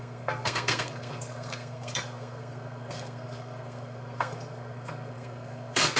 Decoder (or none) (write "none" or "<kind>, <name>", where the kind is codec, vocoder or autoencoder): codec, SNAC